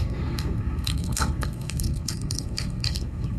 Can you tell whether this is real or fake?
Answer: fake